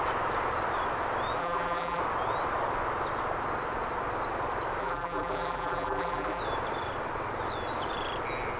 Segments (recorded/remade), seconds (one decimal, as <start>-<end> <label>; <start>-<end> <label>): 0.0-1.4 recorded; 1.4-2.0 remade; 2.0-4.8 recorded; 4.8-6.4 remade; 6.4-8.6 recorded